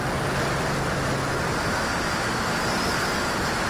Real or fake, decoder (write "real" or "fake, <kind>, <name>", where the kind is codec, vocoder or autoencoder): real